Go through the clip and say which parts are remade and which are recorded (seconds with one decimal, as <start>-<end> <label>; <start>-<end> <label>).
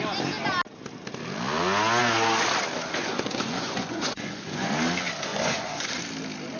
0.0-3.0 recorded; 3.0-4.7 remade; 4.7-5.3 recorded; 5.3-5.9 remade; 5.9-6.6 recorded